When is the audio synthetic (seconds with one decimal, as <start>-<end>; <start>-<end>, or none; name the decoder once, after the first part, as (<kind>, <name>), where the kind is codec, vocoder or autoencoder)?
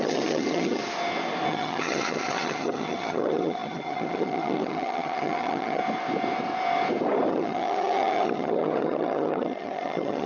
0.0-0.8 (vocoder, HiFi-GAN); 1.5-5.8; 7.3-10.3